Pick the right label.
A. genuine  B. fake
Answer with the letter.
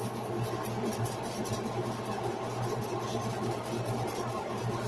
A